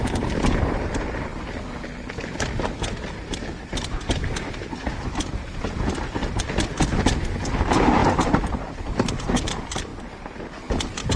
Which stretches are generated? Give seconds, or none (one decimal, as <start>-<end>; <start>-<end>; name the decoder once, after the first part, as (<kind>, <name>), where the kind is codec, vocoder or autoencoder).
0.0-1.3 (vocoder, BigVGAN v2); 5.6-6.2; 6.9-9.9